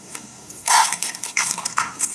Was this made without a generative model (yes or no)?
no